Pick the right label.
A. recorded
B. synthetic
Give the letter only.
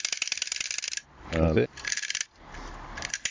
A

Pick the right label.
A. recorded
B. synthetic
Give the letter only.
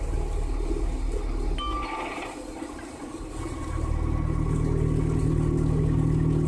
A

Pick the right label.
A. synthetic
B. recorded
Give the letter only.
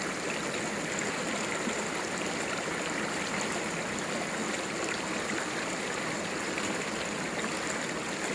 B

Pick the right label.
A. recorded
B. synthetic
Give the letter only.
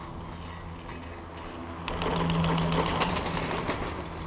A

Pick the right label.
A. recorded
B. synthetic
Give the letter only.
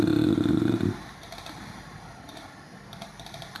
A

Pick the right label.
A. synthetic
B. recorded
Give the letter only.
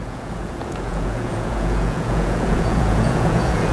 A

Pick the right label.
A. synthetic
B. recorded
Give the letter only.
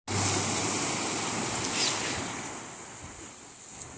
B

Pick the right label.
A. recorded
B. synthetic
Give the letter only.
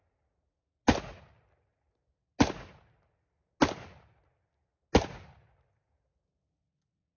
A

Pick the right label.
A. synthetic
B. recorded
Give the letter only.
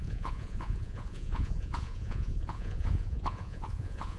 A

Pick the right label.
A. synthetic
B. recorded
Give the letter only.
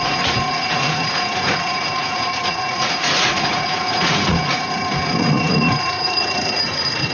A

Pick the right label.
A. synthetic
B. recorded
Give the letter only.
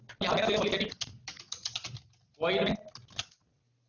B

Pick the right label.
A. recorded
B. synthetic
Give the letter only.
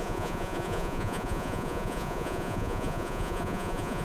B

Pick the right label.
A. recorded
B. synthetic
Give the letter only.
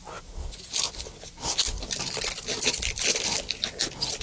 A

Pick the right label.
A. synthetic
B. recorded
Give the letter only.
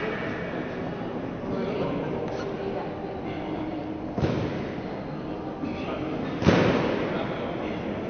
B